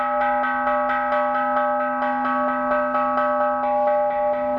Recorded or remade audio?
recorded